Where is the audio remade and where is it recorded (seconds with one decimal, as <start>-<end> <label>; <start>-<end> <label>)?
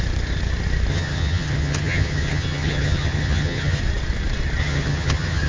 0.0-0.9 recorded; 0.9-3.8 remade; 3.8-4.6 recorded; 4.6-5.5 remade